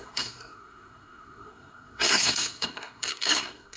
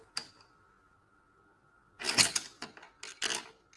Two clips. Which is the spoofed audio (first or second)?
first